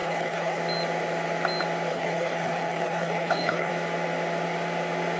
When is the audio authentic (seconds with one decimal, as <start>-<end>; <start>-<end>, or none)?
0.6-1.9; 3.7-5.2